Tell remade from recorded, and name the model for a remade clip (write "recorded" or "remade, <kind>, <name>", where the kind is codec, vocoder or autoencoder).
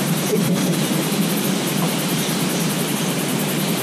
remade, vocoder, BigVGAN v2